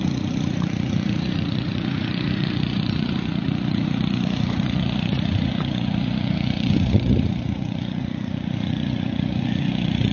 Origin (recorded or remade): remade